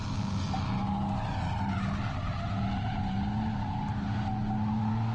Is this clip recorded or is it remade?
recorded